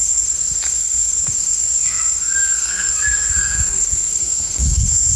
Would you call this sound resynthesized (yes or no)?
yes